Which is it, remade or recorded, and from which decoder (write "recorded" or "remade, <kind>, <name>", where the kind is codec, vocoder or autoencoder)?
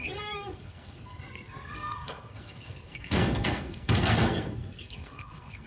remade, codec, SNAC